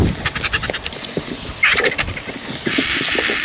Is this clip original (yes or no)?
yes